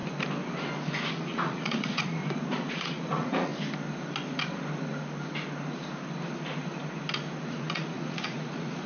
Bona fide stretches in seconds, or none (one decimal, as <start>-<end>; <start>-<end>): 0.0-1.1; 2.2-2.7; 3.5-7.4